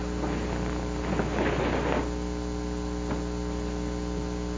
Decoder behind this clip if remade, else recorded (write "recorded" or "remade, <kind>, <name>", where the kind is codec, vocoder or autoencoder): recorded